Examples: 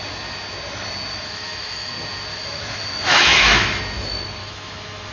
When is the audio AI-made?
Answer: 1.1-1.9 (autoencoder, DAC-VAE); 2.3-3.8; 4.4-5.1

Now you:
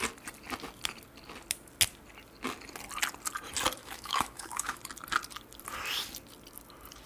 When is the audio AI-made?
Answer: 3.8-4.8 (autoencoder, DAC-VAE)